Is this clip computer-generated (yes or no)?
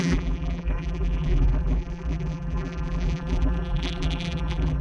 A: yes